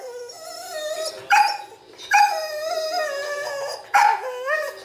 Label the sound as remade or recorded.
recorded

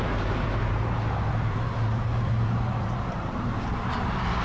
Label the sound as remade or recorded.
remade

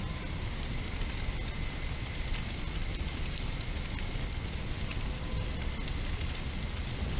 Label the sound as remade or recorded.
recorded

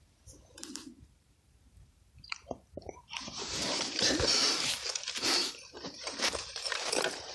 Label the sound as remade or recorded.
remade